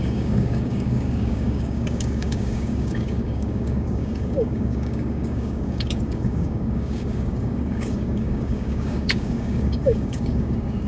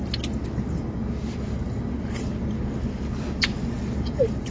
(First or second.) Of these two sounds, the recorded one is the second